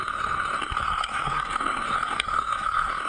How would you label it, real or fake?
fake